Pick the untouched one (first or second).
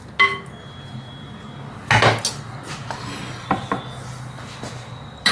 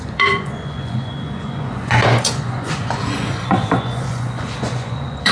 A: first